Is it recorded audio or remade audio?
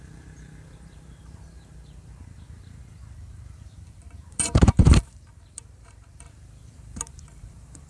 remade